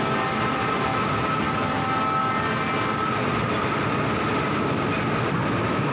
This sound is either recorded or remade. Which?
recorded